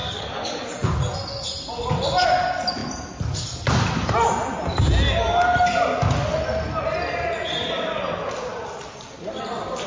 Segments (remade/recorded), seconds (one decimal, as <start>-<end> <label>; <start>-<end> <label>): 0.0-0.7 remade; 0.7-9.9 recorded